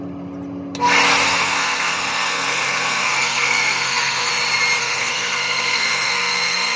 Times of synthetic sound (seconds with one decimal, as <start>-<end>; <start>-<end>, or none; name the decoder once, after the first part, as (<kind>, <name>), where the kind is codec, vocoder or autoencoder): 1.3-4.3 (codec, SNAC); 4.8-6.8